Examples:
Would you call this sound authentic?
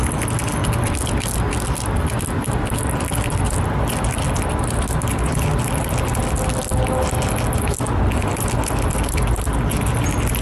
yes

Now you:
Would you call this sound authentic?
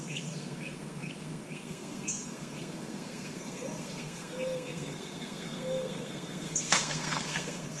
no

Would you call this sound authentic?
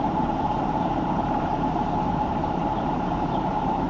no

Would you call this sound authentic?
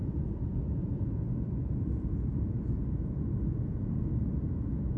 no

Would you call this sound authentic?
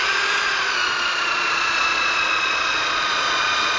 no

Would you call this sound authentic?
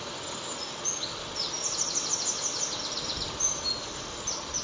yes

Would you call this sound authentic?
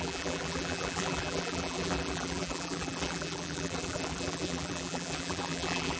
no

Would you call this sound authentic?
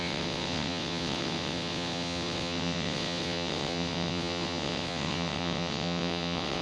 no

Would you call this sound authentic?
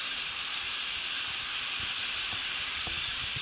yes